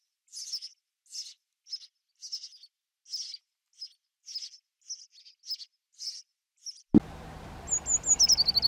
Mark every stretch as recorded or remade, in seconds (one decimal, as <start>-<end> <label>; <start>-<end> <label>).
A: 0.0-8.7 recorded